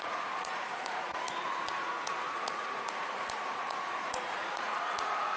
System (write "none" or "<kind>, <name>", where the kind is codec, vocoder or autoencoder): vocoder, Vocos